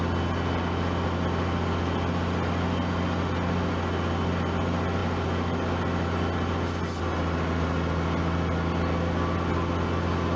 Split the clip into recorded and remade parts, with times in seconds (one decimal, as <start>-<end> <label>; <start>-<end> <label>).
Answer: 0.0-10.4 recorded